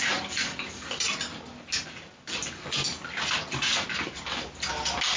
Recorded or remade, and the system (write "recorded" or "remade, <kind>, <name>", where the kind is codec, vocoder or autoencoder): recorded